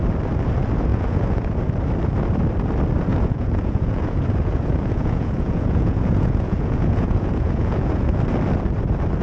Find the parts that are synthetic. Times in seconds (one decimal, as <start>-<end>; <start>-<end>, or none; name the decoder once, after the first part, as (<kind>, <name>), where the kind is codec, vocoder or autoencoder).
0.9-1.6 (vocoder, Vocos); 3.1-8.2